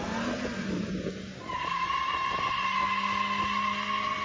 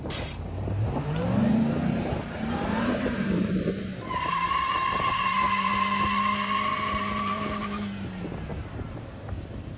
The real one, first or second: first